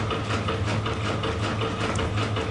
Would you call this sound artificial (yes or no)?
no